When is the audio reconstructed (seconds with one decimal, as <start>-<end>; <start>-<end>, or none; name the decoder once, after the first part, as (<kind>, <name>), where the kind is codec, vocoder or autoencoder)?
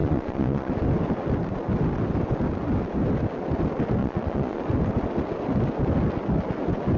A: 0.0-0.7 (vocoder, Vocos); 4.0-4.6